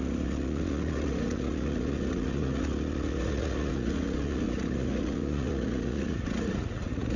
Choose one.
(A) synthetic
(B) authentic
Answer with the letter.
A